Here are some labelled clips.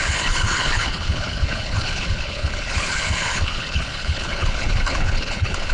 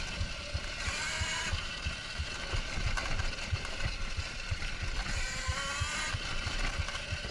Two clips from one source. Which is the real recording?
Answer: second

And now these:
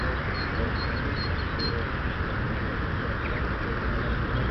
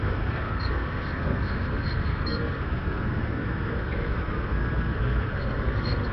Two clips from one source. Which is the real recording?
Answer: first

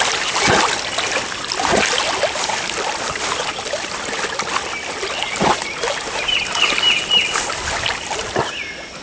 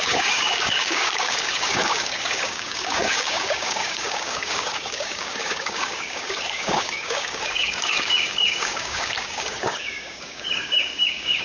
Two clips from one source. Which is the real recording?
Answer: first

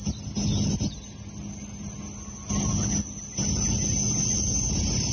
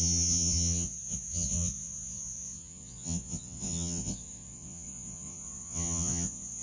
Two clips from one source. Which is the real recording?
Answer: first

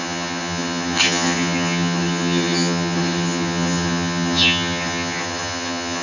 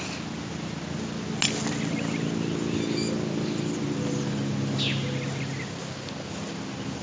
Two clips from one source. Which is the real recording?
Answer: second